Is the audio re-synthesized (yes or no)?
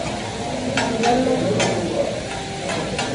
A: no